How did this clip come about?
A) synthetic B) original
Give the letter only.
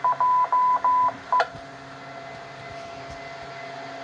B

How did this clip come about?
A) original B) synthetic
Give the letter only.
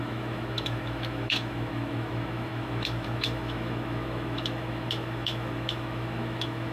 B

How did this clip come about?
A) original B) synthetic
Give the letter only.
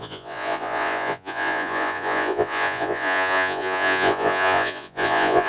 B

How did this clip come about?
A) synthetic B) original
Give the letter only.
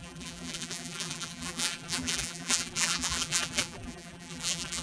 A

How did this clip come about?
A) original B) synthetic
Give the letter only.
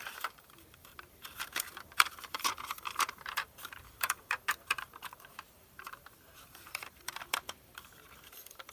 B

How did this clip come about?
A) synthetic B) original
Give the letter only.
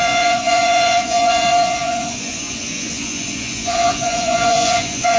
A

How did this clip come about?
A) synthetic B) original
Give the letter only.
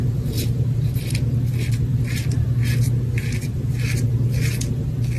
B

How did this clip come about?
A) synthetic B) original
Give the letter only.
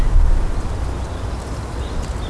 B